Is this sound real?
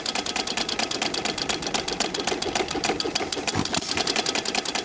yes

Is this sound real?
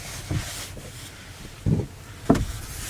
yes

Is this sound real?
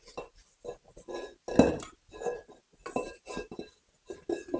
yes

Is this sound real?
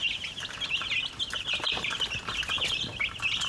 no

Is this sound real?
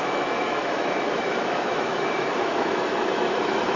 no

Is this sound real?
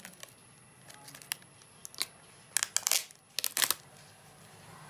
yes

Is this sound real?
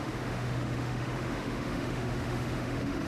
no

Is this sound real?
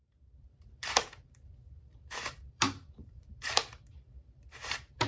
no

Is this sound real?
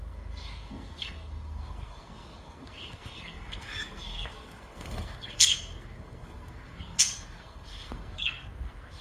no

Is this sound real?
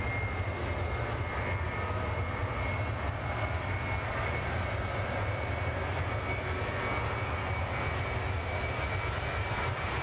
yes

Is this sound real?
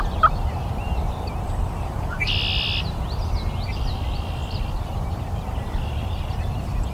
no